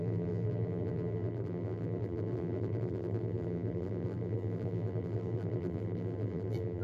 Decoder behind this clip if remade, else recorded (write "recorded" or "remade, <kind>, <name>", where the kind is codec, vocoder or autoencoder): remade, vocoder, BigVGAN v2